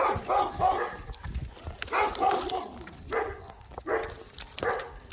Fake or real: real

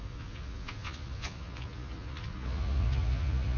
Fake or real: fake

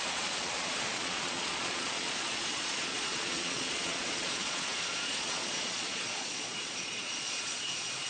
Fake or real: fake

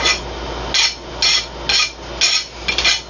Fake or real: real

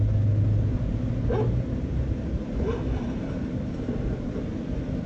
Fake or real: real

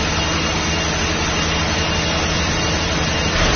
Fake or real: real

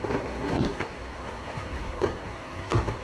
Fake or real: fake